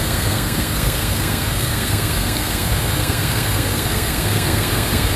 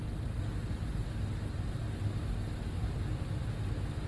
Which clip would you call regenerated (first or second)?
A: first